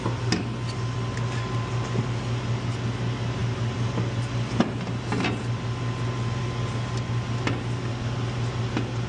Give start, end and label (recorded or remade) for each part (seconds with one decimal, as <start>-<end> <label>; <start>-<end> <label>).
0.0-9.1 recorded